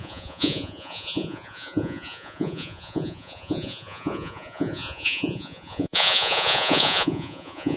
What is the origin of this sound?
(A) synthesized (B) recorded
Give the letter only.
A